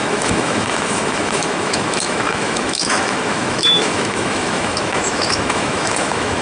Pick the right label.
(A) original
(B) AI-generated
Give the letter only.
B